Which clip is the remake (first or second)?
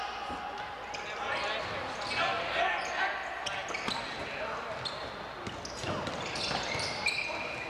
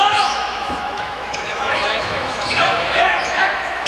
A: second